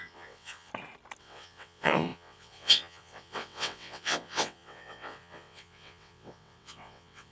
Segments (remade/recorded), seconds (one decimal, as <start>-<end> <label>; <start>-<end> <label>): 0.0-0.7 remade; 0.7-1.2 recorded; 1.2-7.3 remade